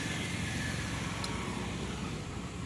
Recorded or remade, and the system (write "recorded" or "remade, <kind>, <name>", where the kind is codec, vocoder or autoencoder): remade, vocoder, BigVGAN v2